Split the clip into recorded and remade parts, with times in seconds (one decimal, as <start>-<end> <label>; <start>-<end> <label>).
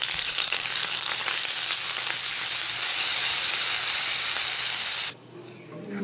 0.0-2.7 recorded; 2.7-3.3 remade; 3.3-6.0 recorded